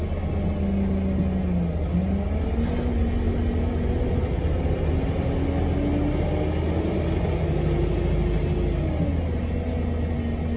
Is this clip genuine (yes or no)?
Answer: yes